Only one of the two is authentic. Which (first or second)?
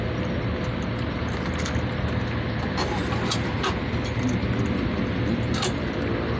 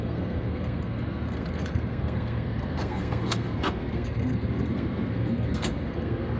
first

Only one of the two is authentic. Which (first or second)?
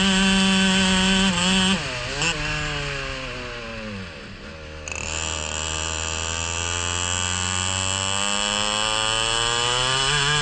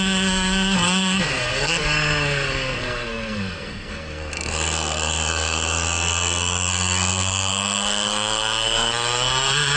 first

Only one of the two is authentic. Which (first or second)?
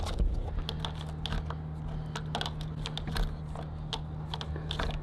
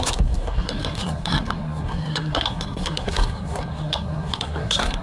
first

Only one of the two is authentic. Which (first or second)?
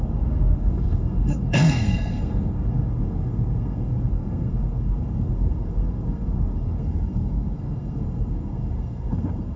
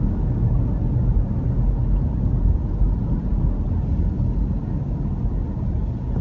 second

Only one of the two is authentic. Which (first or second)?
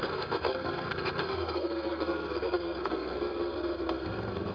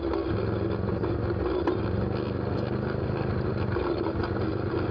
second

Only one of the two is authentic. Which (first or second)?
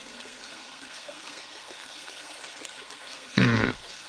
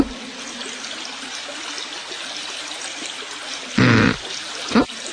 second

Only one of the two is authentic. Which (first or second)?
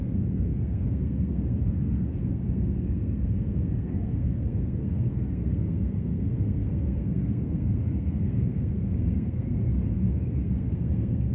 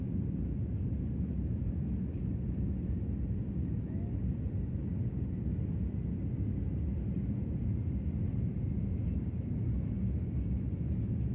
second